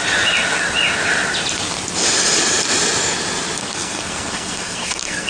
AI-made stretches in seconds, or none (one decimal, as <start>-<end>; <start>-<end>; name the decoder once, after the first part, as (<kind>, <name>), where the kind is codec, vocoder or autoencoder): 3.6-5.3 (codec, SNAC)